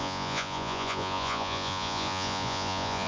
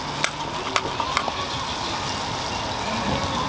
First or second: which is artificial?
first